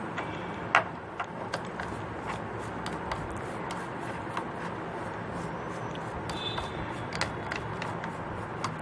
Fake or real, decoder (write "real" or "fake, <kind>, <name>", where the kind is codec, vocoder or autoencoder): real